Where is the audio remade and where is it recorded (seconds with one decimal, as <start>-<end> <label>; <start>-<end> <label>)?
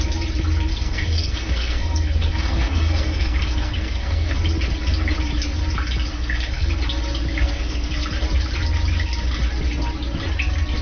0.0-0.7 recorded; 0.7-4.4 remade; 4.4-6.1 recorded; 6.1-6.7 remade; 6.7-7.3 recorded; 7.3-7.9 remade; 7.9-10.8 recorded